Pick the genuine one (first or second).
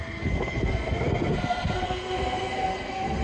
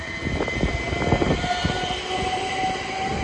second